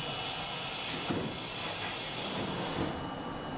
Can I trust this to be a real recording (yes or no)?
yes